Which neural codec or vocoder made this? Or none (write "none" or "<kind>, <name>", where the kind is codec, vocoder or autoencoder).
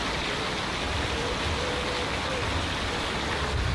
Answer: none